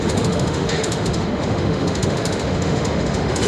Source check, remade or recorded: remade